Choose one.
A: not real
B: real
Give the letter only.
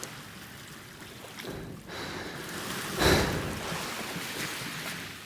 B